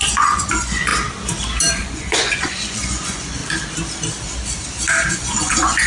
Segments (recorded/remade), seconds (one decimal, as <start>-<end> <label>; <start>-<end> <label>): 0.0-0.9 remade; 0.9-1.7 recorded; 1.7-3.4 remade; 3.4-5.1 recorded; 5.1-5.9 remade